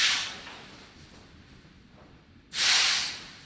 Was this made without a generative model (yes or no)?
yes